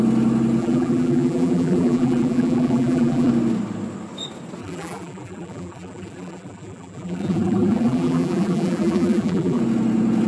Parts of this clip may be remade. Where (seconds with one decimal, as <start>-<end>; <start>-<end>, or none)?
0.6-3.3; 4.6-9.6